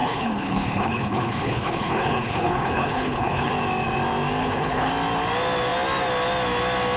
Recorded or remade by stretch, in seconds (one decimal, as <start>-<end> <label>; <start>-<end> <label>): 0.0-3.5 remade; 3.5-4.4 recorded; 4.4-4.9 remade; 4.9-7.0 recorded